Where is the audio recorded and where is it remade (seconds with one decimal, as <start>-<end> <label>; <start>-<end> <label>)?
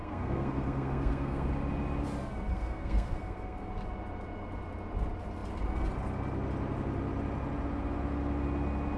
0.0-1.5 remade; 1.5-2.5 recorded; 2.5-3.7 remade; 3.7-9.0 recorded